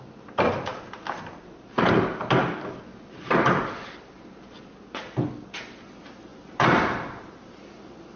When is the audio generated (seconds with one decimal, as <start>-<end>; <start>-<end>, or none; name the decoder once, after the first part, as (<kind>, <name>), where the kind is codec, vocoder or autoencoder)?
0.7-2.4 (vocoder, BigVGAN v2); 2.9-4.6; 6.3-8.2